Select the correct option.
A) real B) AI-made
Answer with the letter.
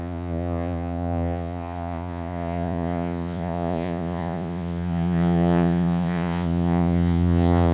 B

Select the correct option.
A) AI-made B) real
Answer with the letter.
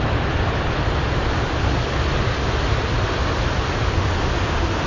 B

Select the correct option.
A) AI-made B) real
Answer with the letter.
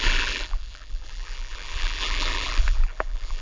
A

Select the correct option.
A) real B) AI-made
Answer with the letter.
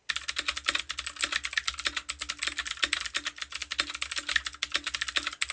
A